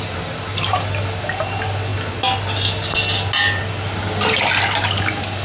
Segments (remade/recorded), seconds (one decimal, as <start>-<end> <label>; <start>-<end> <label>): 0.0-5.4 recorded